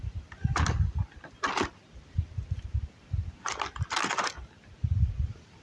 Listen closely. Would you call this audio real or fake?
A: real